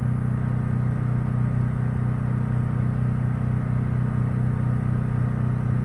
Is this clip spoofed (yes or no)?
no